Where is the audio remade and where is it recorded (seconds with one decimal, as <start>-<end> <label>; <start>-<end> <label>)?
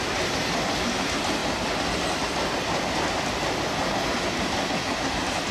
0.0-5.5 recorded